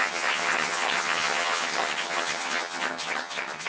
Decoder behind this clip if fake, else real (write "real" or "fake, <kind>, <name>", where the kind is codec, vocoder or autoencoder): fake, vocoder, HiFi-GAN